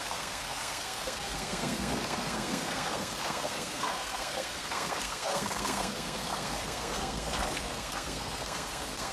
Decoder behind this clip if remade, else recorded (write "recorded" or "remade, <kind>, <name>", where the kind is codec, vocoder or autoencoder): remade, codec, SNAC